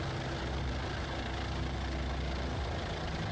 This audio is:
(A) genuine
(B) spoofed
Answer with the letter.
A